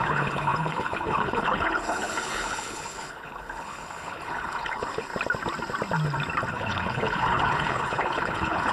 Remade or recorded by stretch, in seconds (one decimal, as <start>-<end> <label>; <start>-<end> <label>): 0.0-5.1 remade; 5.1-6.5 recorded; 6.5-8.7 remade